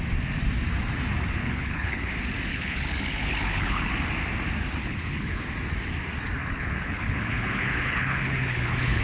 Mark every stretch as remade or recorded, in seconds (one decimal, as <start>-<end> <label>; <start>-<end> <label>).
0.0-1.4 recorded; 1.4-2.1 remade; 2.1-2.5 recorded; 2.5-3.9 remade; 3.9-4.8 recorded; 4.8-5.4 remade; 5.4-6.4 recorded; 6.4-9.0 remade